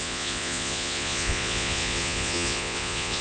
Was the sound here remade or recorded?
remade